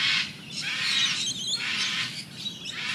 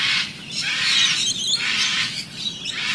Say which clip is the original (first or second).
first